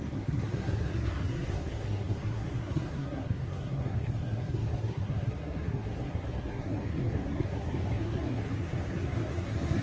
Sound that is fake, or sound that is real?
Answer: fake